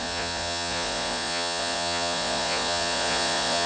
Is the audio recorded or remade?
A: remade